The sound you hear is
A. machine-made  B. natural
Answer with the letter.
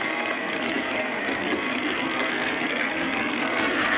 A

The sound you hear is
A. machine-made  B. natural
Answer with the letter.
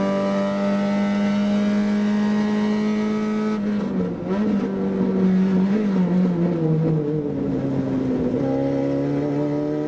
B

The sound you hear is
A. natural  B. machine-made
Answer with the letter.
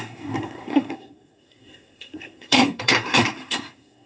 B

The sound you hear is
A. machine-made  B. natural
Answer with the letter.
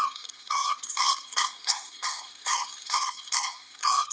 A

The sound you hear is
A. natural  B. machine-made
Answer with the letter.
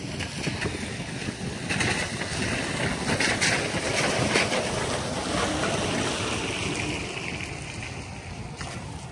A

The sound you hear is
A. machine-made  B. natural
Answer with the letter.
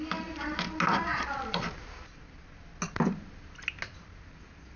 B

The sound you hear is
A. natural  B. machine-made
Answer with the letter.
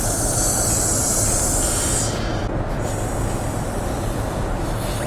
A